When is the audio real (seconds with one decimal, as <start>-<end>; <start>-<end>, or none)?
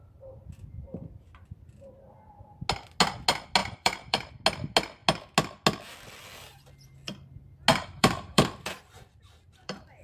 0.0-3.6; 4.3-7.7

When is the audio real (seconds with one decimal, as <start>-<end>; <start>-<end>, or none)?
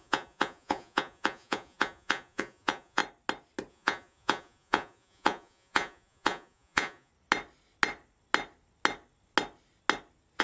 3.0-3.7; 7.1-10.4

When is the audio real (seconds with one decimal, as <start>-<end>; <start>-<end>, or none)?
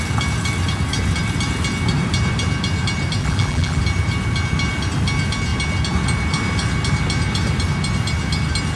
0.0-3.2; 3.8-8.8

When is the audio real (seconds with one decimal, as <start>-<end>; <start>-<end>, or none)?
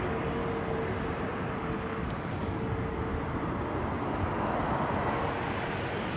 0.4-1.5; 3.1-5.5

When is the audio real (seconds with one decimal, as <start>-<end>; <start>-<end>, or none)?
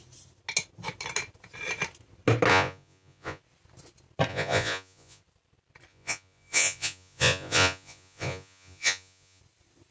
0.0-2.5; 3.4-4.3; 5.2-5.9; 9.4-9.9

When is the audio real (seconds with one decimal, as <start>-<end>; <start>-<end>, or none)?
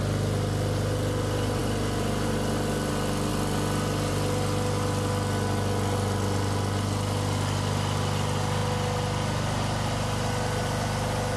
0.0-11.4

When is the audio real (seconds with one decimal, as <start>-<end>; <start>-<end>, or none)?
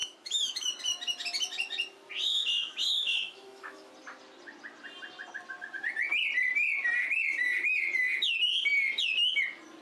0.8-2.3; 3.9-9.8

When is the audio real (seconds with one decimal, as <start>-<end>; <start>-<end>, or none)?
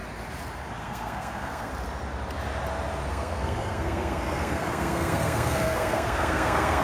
0.0-0.8; 1.7-3.1